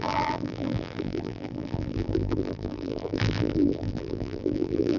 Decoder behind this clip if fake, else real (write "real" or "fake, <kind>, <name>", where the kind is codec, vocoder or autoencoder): fake, vocoder, BigVGAN v2